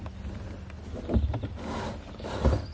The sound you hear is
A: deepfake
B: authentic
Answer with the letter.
B